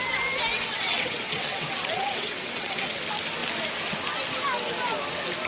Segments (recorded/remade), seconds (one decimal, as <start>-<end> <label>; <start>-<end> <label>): 0.0-0.5 recorded; 0.5-3.0 remade; 3.0-5.5 recorded

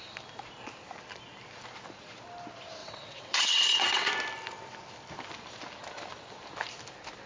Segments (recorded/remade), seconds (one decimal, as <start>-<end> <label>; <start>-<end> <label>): 0.0-2.8 recorded; 2.8-4.1 remade; 4.1-7.3 recorded